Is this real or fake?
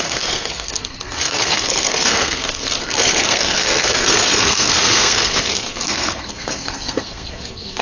fake